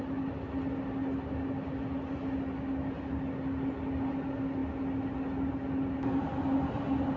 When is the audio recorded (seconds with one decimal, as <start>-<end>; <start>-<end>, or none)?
0.0-7.2